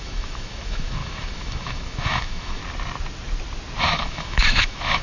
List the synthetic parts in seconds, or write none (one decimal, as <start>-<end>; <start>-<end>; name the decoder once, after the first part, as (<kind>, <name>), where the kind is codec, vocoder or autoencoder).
0.0-2.6 (autoencoder, DAC-VAE); 3.8-5.0